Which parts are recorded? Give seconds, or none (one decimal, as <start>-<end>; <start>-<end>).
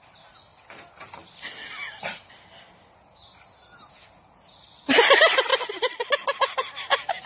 0.0-5.5; 6.1-7.3